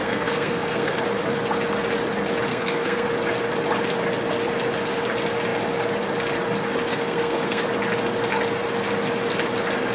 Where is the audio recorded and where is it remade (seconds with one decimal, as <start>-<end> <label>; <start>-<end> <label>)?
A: 0.0-1.0 remade; 1.0-2.5 recorded; 2.5-3.1 remade; 3.1-6.9 recorded; 6.9-7.6 remade; 7.6-9.9 recorded